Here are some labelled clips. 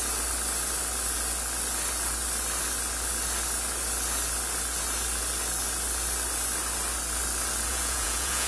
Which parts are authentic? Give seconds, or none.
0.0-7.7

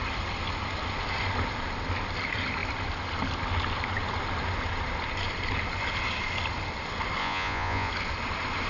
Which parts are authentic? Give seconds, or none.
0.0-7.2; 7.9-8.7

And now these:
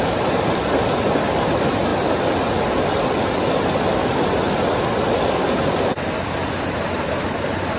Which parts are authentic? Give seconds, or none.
0.0-7.8